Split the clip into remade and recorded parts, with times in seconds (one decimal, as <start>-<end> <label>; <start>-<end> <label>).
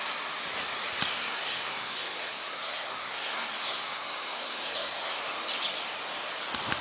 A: 0.0-1.1 recorded; 1.1-5.2 remade; 5.2-6.8 recorded